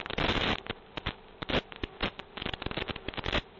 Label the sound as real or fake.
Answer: real